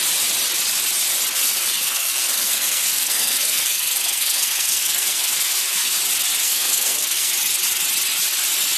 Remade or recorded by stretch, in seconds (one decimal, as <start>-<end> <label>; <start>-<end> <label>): 0.0-1.4 recorded; 1.4-6.0 remade; 6.0-6.4 recorded; 6.4-7.3 remade; 7.3-8.8 recorded